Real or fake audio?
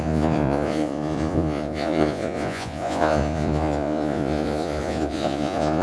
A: fake